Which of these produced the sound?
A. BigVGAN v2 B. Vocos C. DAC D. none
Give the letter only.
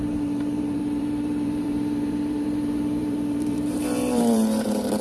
A